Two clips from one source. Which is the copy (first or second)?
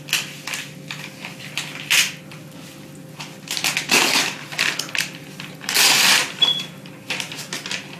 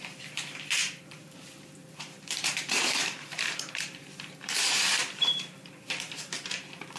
second